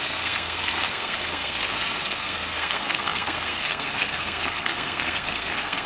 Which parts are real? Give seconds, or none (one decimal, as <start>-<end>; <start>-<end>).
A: none